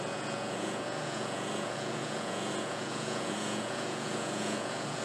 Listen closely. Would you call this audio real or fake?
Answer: fake